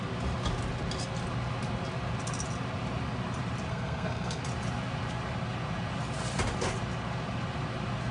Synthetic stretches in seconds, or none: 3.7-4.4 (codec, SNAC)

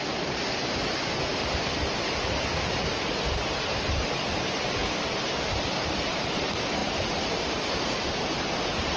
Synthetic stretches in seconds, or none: 0.0-9.0 (vocoder, BigVGAN v2)

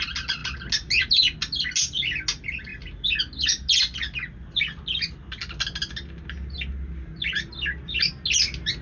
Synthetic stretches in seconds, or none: none

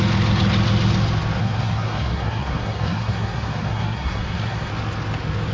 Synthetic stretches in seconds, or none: 1.4-4.7 (codec, SNAC)

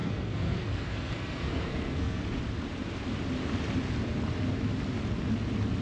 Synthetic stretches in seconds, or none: 0.0-2.2 (codec, SNAC)

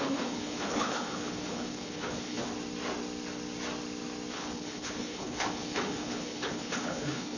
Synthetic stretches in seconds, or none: 0.0-2.5 (codec, HILCodec); 4.3-7.4

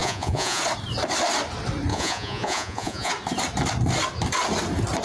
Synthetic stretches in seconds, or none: 0.0-0.6 (vocoder, Vocos); 1.9-3.1

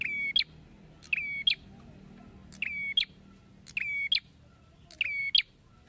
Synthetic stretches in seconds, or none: none